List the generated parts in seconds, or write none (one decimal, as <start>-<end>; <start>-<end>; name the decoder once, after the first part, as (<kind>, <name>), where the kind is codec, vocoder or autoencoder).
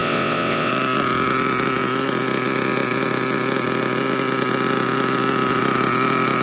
0.0-0.7 (vocoder, WaveNeXt)